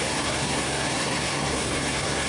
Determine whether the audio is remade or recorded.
remade